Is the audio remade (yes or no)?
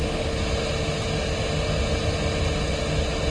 no